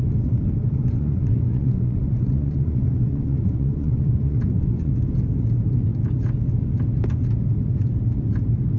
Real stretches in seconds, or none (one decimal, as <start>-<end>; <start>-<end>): 0.0-0.8; 4.9-8.8